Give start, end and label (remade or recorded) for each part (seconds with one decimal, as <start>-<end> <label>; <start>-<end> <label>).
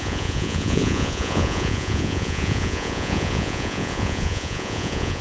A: 0.0-5.2 remade